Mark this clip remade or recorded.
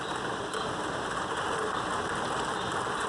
recorded